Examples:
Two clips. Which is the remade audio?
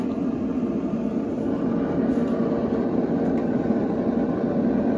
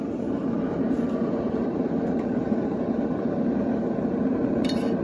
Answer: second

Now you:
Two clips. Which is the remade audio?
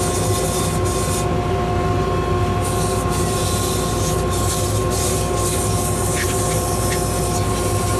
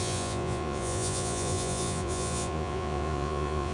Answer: second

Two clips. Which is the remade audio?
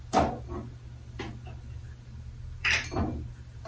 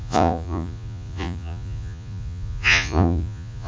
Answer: second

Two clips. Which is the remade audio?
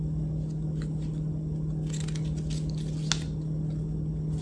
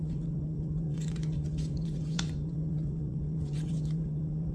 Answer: second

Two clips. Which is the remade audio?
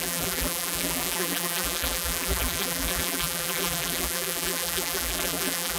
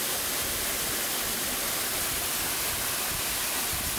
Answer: first